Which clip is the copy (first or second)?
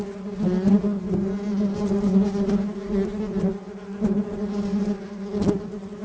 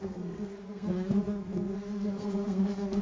second